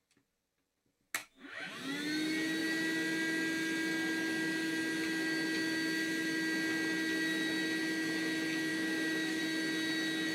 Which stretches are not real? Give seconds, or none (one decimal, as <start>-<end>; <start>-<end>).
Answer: 1.2-1.7; 8.7-9.4